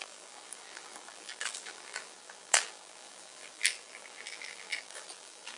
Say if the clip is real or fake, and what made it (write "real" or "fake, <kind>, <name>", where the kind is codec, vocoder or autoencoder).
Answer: fake, vocoder, BigVGAN v2